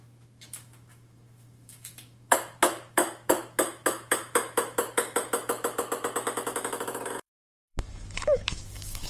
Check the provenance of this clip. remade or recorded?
remade